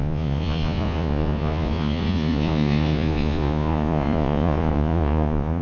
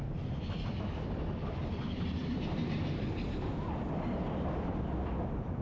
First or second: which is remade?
first